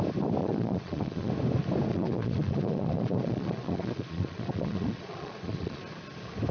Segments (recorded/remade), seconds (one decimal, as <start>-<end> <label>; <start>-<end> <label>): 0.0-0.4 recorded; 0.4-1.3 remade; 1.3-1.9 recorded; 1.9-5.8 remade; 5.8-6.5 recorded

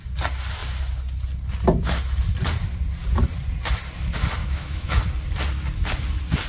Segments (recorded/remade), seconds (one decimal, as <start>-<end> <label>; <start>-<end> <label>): 0.0-4.4 recorded; 4.4-5.0 remade; 5.0-6.5 recorded

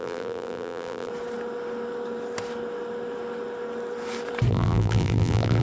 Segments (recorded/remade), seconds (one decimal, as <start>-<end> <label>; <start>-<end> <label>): 0.0-1.1 remade; 1.1-4.5 recorded; 4.5-5.6 remade

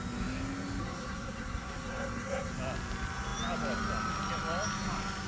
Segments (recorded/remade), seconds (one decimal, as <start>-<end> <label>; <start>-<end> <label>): 0.0-0.8 recorded; 0.8-2.5 remade; 2.5-5.3 recorded

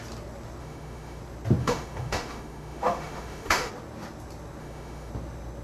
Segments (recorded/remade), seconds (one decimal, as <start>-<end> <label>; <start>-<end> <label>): 0.0-0.6 recorded; 0.6-1.2 remade; 1.2-1.6 recorded; 1.6-3.7 remade; 3.7-4.6 recorded; 4.6-5.1 remade; 5.1-5.6 recorded